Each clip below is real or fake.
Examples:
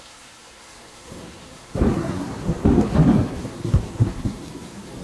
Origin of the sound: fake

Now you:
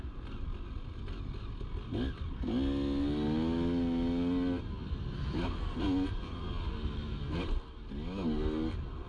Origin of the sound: real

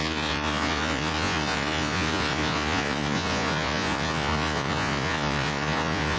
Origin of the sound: fake